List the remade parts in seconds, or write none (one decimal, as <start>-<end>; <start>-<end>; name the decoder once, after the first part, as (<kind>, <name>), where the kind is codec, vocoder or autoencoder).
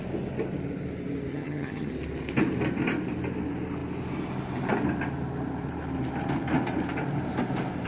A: 1.3-1.9 (vocoder, HiFi-GAN)